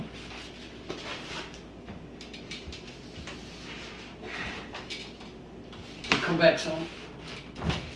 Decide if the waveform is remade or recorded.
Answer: recorded